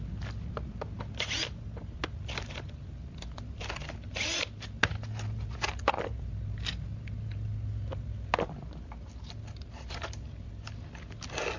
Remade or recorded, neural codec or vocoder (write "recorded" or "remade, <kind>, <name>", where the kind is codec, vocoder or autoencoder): recorded